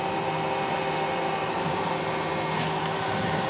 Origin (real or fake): real